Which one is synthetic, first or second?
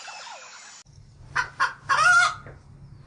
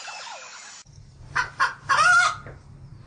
second